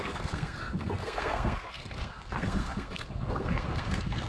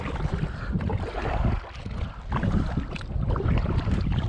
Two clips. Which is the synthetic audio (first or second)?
first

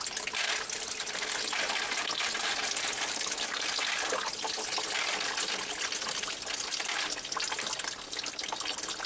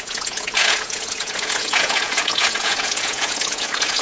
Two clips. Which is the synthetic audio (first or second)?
second